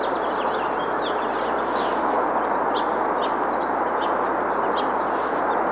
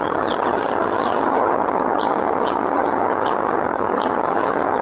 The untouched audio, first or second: first